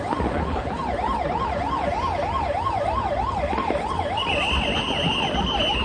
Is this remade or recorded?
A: recorded